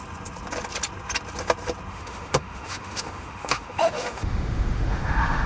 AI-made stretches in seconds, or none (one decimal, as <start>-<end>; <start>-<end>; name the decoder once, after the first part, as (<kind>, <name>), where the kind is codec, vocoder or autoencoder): 1.9-5.5 (autoencoder, DAC-VAE)